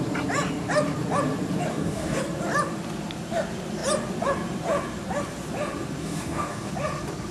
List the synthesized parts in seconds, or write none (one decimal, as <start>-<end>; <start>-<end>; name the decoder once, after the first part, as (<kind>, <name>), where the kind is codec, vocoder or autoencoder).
1.7-2.2 (codec, DAC); 6.0-6.7